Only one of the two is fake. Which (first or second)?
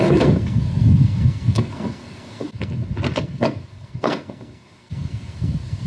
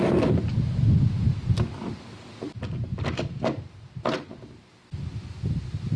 first